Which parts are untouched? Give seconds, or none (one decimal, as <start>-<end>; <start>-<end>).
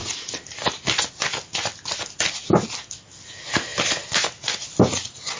0.0-5.4